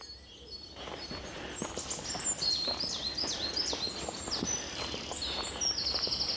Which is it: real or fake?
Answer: real